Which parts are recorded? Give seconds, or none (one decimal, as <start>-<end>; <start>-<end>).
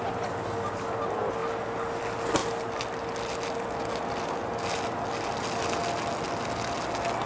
0.0-7.3